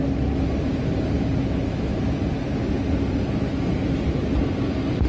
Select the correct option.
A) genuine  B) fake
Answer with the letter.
A